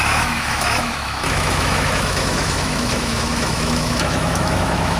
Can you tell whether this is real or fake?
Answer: fake